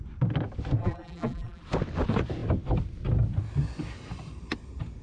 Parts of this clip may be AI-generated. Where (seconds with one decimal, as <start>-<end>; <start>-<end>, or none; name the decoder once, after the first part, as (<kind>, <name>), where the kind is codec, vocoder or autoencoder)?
0.8-1.6 (vocoder, BigVGAN v2)